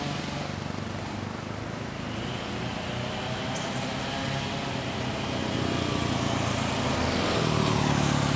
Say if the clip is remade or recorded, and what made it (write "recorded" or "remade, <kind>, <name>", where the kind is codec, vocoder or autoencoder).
recorded